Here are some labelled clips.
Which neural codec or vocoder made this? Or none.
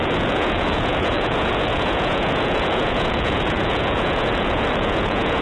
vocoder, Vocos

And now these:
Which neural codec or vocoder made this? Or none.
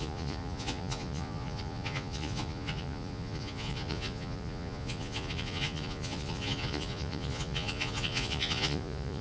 vocoder, Vocos